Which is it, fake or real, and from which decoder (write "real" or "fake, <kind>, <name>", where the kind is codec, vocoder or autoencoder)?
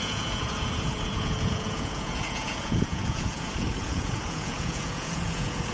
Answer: fake, vocoder, Vocos